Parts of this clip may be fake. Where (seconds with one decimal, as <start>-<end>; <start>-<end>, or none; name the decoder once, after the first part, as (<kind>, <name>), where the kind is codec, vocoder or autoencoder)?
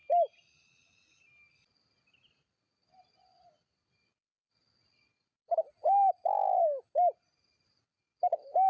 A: none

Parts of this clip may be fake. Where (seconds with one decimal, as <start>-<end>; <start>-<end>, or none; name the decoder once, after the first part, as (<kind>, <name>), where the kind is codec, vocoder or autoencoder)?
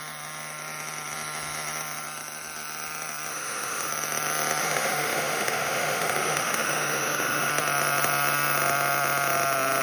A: 3.3-3.9 (autoencoder, DAC-VAE); 4.6-7.5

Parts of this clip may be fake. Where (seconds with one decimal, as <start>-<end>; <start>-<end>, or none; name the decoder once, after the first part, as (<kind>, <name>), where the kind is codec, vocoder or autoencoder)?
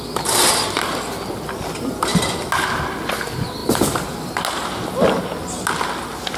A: none